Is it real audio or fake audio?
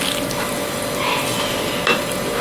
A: real